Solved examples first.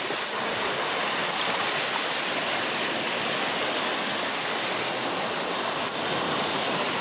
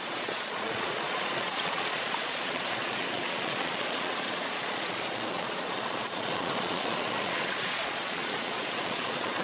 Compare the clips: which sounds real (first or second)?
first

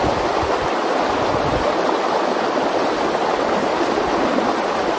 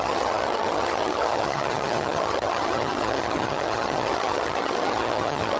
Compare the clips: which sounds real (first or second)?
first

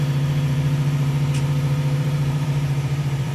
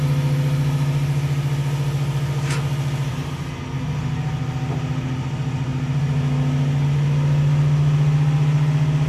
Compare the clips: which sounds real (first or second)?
second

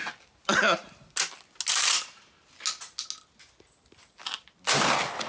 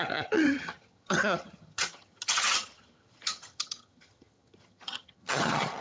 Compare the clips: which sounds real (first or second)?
first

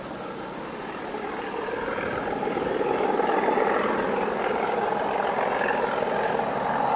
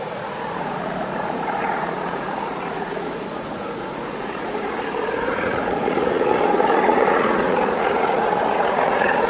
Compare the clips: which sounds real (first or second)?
first